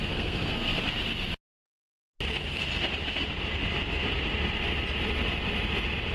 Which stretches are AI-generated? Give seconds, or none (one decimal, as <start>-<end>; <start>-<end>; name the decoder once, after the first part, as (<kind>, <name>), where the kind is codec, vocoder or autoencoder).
0.0-0.8 (codec, SNAC)

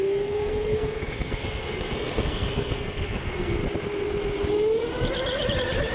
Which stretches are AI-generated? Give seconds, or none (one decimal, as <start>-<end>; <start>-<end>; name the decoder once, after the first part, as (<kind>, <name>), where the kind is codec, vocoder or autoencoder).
0.0-3.6 (codec, SNAC)